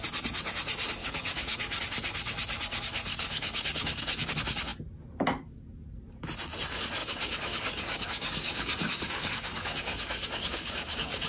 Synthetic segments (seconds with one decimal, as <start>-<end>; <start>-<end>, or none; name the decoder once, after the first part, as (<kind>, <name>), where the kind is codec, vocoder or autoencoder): 1.0-1.8 (codec, DAC); 3.1-4.3; 7.0-11.3